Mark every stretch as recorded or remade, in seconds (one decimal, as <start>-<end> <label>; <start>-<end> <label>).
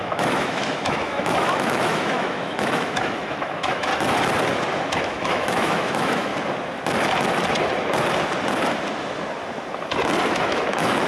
0.0-3.9 remade; 3.9-5.0 recorded; 5.0-6.3 remade; 6.3-10.3 recorded; 10.3-11.1 remade